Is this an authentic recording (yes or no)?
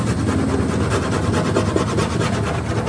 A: yes